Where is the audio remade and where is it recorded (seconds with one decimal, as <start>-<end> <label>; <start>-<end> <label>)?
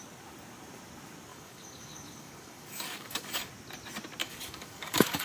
0.0-1.3 recorded; 1.3-3.5 remade; 3.5-4.2 recorded; 4.2-5.2 remade